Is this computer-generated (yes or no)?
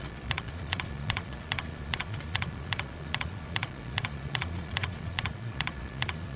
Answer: yes